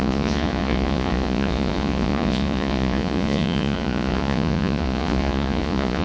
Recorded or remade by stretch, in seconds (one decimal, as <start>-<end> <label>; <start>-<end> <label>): 0.0-6.0 remade